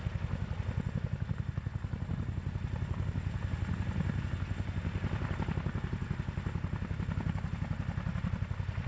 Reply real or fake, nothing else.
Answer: real